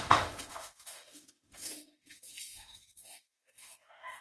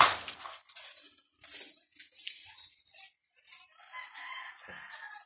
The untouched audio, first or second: second